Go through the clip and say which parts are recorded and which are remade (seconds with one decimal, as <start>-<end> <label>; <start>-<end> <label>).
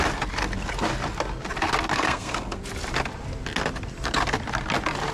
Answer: 0.0-1.9 recorded; 1.9-2.6 remade; 2.6-5.1 recorded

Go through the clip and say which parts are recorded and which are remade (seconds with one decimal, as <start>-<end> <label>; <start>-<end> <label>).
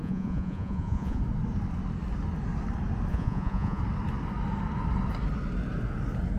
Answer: 0.0-1.2 remade; 1.2-3.1 recorded; 3.1-3.8 remade; 3.8-6.4 recorded